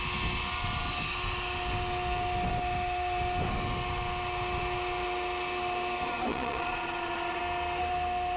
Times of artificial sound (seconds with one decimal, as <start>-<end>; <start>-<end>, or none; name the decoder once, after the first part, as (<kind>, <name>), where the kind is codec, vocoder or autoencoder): 6.3-7.4 (vocoder, Vocos)